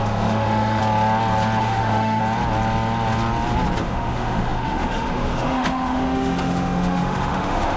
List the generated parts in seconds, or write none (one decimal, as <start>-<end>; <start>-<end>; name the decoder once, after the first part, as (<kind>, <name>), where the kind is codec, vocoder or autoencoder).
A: 0.0-0.8 (autoencoder, DAC-VAE); 1.6-2.2; 3.8-7.8